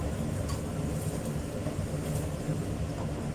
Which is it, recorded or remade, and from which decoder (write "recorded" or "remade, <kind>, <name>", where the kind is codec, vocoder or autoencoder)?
recorded